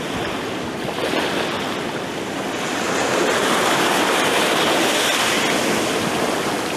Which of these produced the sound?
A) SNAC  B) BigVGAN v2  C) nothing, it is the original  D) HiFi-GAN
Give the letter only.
C